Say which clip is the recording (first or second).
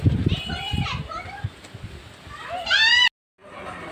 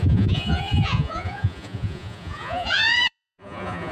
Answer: first